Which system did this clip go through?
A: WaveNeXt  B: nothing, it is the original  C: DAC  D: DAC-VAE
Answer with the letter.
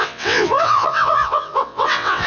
A